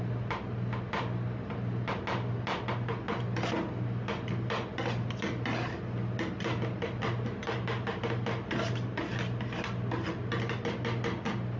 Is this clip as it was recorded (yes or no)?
yes